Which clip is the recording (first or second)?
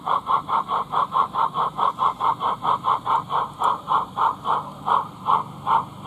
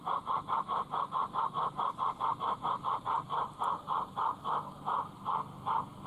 second